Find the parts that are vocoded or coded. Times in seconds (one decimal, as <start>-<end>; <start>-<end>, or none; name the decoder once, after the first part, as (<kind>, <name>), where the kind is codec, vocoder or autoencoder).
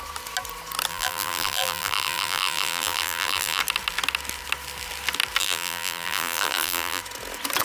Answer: 0.9-3.6 (vocoder, BigVGAN v2); 5.4-7.0